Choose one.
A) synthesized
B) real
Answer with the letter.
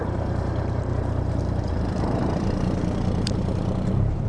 A